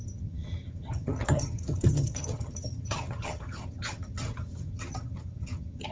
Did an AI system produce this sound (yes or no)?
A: yes